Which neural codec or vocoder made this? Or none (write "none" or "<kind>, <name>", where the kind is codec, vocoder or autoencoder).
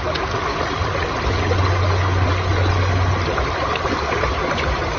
none